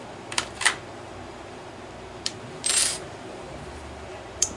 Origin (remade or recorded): remade